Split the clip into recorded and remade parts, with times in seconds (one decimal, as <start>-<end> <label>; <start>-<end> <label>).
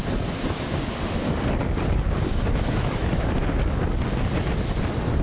0.0-2.3 recorded; 2.3-3.4 remade; 3.4-5.2 recorded